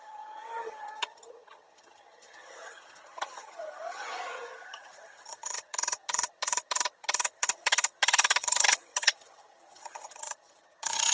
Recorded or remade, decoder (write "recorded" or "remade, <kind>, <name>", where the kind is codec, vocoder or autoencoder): remade, vocoder, HiFi-GAN